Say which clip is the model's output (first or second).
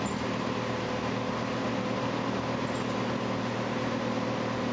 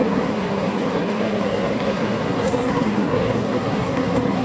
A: second